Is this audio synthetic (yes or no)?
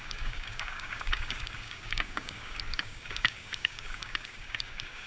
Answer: yes